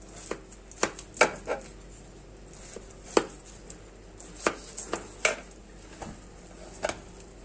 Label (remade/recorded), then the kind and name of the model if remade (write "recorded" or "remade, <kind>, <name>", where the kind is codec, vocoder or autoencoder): recorded